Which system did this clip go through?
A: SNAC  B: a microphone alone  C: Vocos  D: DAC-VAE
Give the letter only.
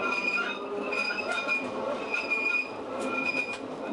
B